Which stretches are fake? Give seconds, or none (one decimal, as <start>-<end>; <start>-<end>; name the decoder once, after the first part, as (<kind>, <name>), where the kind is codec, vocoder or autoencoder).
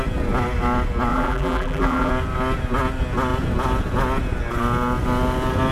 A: 1.1-2.1 (vocoder, BigVGAN v2)